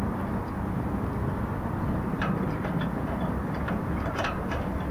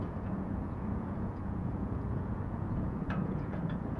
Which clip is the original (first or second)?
first